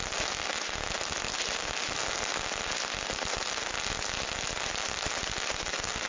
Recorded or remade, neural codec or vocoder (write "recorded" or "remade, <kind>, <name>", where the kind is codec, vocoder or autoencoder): recorded